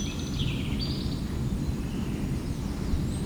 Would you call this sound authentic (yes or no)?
yes